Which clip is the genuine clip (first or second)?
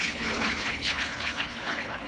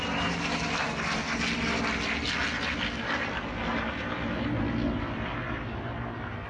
second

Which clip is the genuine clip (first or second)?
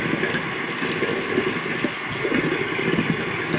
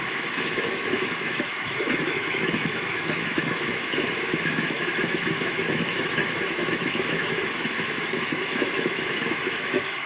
first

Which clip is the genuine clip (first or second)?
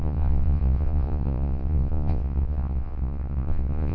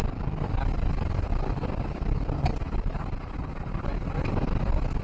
second